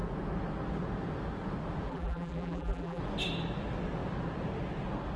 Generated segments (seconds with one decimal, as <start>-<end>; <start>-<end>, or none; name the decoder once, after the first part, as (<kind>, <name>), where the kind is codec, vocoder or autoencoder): 1.9-3.0 (vocoder, BigVGAN v2)